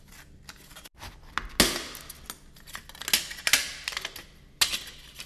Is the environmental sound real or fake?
real